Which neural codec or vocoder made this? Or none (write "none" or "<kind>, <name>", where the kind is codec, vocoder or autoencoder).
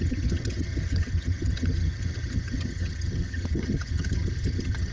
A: vocoder, HiFi-GAN